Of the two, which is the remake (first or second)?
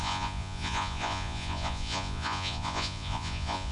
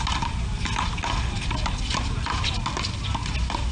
first